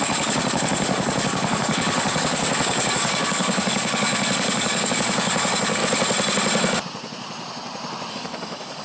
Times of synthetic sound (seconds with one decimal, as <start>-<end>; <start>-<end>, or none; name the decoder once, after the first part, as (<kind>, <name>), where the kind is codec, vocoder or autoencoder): 0.0-5.8 (codec, DAC); 8.1-8.8